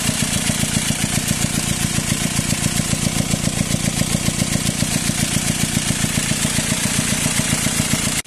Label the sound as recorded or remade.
remade